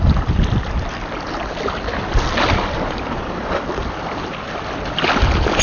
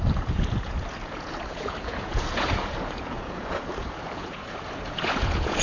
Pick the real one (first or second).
first